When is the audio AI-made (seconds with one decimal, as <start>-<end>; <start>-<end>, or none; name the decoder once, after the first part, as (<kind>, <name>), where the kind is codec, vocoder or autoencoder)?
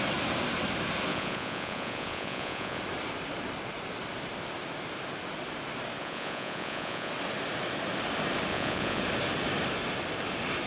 1.1-2.8 (vocoder, Vocos); 6.0-7.1; 8.5-9.0